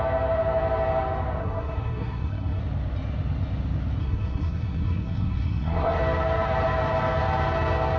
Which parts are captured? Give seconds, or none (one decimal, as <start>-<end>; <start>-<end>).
0.0-1.4; 2.6-4.0; 6.0-8.0